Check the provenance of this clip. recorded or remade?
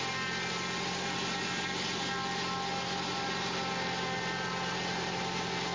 recorded